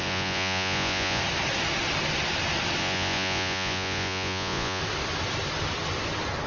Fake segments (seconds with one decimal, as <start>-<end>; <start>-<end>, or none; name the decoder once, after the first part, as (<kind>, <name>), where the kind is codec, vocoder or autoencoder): 0.0-1.2 (vocoder, Vocos); 2.8-4.8